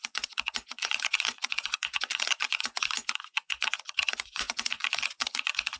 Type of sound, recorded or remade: remade